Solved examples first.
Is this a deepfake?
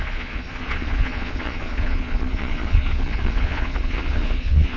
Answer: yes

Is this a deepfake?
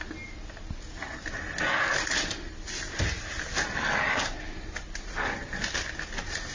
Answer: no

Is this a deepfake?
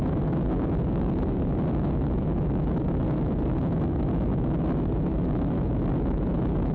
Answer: yes